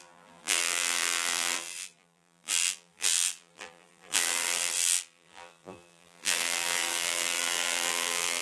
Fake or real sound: fake